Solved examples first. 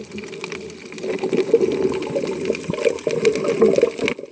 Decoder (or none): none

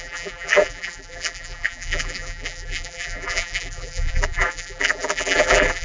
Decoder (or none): vocoder, BigVGAN v2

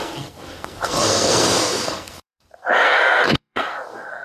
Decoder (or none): codec, SNAC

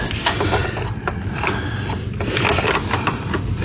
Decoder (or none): none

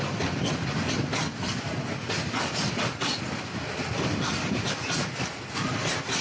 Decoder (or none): none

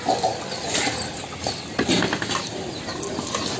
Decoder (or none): none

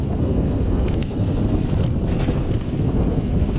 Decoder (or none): codec, SNAC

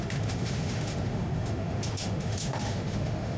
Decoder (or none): autoencoder, DAC-VAE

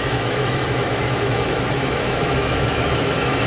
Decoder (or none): autoencoder, DAC-VAE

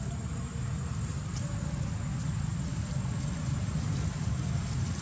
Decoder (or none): none